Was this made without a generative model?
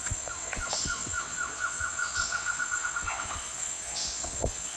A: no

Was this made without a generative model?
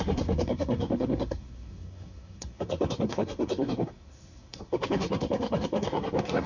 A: no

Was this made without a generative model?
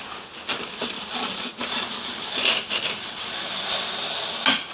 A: yes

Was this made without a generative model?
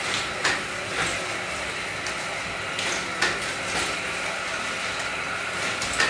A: yes